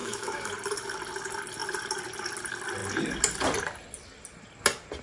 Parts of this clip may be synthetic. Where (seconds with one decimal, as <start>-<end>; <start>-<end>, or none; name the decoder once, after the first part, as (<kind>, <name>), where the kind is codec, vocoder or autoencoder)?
0.0-0.5 (autoencoder, DAC-VAE)